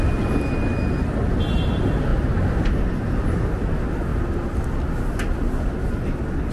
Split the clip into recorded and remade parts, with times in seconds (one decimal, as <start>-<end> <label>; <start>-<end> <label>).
0.0-6.5 recorded